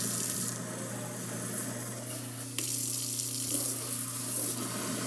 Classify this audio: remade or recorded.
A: recorded